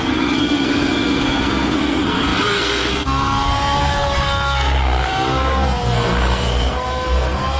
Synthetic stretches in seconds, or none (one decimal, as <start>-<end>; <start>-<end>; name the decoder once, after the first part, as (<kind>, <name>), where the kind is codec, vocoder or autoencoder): 0.0-7.6 (codec, SNAC)